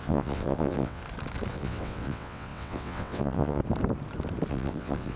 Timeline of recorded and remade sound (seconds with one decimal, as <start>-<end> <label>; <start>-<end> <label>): 0.0-1.0 remade; 1.0-1.5 recorded; 1.5-3.6 remade; 3.6-4.5 recorded; 4.5-5.2 remade